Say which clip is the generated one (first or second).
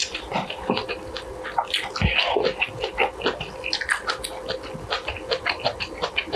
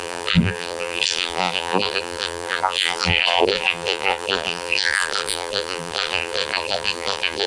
second